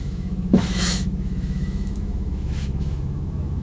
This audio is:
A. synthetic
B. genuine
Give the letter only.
A